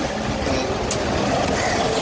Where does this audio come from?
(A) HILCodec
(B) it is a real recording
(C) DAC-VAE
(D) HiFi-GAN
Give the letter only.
B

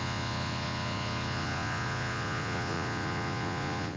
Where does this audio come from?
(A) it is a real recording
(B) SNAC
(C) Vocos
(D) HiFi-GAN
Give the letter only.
C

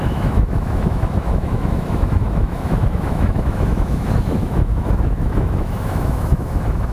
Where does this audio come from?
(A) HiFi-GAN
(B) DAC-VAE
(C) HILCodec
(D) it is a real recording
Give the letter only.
B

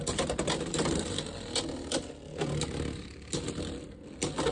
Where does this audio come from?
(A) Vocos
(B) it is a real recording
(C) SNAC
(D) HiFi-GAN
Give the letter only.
B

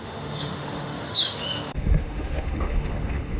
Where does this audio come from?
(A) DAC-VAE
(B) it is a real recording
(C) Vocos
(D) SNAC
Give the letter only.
A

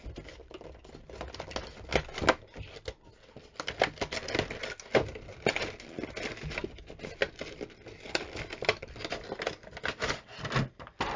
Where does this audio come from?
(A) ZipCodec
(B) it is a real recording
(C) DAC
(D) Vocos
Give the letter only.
B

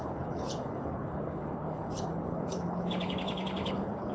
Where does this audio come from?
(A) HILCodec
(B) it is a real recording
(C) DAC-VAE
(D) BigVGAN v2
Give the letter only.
A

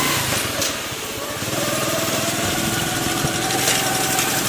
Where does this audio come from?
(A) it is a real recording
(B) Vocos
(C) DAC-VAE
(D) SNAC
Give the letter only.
A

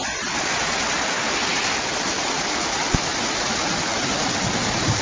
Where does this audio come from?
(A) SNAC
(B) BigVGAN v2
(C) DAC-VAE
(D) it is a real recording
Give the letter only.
D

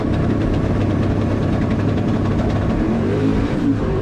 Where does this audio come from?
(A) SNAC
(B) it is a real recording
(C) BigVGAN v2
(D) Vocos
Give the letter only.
C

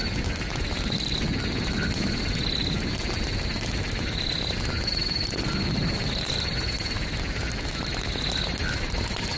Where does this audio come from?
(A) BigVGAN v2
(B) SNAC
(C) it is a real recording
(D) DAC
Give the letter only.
C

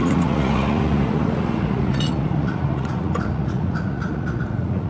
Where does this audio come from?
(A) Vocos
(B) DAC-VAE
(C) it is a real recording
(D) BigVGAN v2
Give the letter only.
A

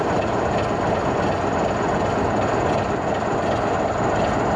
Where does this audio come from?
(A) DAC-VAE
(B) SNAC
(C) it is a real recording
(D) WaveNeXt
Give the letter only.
C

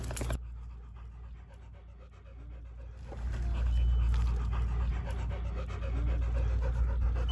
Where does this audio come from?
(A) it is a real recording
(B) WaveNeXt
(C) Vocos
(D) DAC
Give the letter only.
A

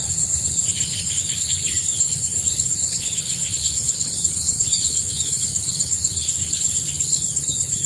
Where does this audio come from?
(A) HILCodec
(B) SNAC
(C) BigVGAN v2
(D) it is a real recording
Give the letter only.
A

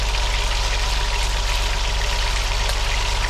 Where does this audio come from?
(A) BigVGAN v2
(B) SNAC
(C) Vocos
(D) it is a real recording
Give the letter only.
D